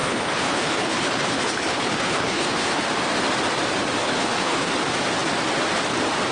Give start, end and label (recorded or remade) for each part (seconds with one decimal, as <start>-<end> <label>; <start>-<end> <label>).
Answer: 0.0-2.8 remade; 2.8-4.0 recorded; 4.0-4.7 remade; 4.7-6.3 recorded